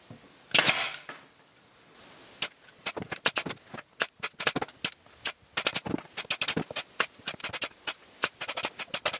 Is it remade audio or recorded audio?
recorded